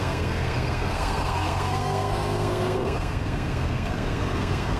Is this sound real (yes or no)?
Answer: no